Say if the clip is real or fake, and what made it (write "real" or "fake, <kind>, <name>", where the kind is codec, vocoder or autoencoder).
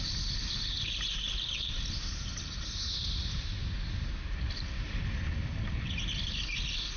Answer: real